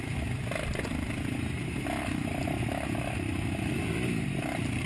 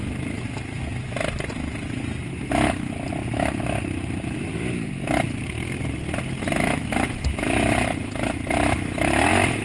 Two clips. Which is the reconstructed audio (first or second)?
first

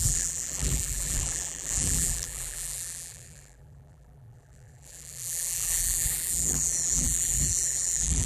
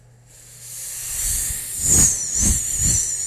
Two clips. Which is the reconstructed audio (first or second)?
first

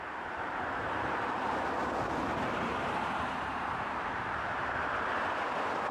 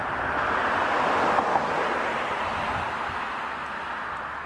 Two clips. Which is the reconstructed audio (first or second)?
first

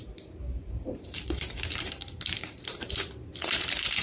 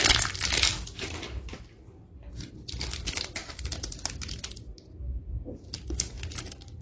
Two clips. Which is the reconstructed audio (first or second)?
first